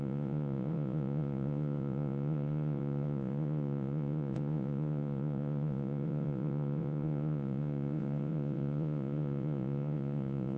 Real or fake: fake